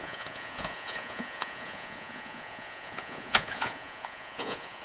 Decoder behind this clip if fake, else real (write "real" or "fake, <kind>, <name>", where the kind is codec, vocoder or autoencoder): fake, vocoder, Vocos